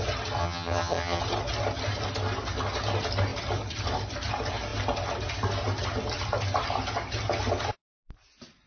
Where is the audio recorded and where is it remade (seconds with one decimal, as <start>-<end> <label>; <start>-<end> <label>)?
0.0-0.4 recorded; 0.4-1.2 remade; 1.2-8.7 recorded